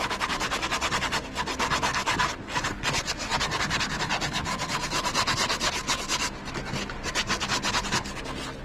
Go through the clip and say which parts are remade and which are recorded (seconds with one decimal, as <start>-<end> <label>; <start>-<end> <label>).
0.0-8.6 recorded